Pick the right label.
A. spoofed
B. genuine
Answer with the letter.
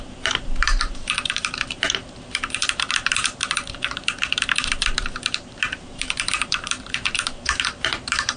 A